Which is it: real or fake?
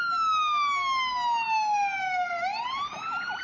real